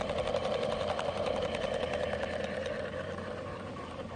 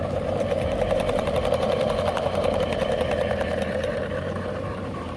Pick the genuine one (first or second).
first